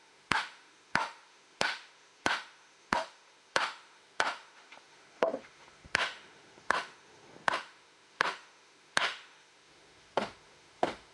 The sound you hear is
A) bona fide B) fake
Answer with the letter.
B